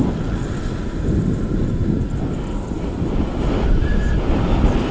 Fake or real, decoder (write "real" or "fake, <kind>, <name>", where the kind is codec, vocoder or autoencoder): real